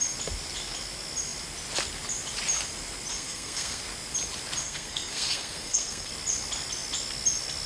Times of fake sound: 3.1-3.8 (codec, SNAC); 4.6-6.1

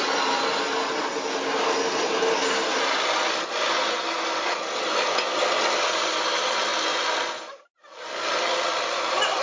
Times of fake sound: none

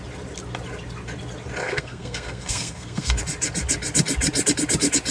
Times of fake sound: 1.6-3.2 (codec, SNAC)